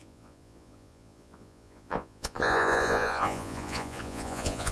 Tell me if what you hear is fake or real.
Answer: fake